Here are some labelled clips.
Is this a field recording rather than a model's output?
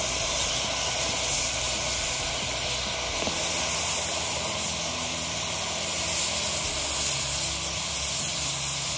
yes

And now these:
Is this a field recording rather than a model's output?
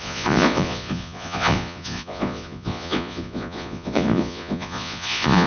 no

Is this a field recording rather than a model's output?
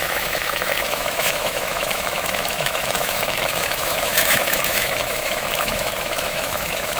no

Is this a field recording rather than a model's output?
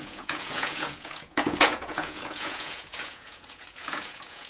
no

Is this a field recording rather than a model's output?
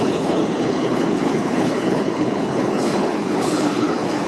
no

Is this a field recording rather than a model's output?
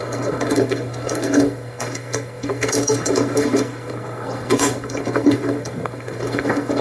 no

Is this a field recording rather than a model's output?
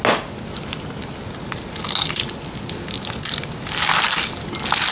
yes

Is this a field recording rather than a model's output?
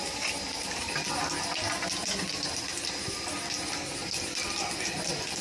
yes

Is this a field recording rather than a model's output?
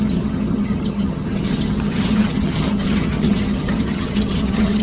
no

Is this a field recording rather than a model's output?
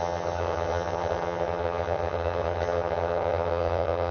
no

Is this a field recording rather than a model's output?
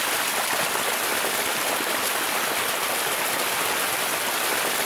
yes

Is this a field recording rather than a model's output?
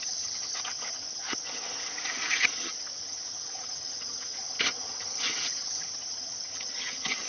no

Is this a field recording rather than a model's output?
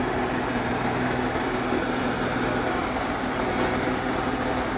yes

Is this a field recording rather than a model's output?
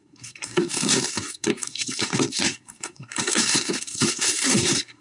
no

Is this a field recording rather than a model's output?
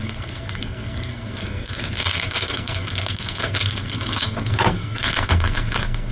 no